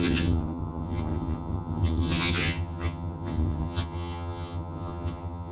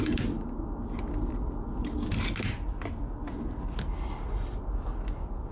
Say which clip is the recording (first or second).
second